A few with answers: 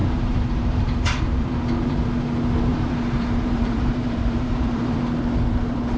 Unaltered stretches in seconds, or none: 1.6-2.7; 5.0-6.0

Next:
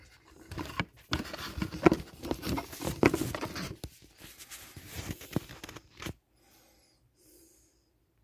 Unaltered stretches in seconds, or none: none

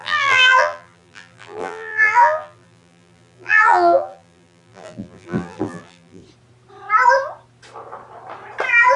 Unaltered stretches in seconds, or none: 6.2-9.0

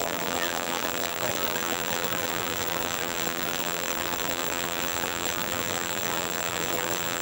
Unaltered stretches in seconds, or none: none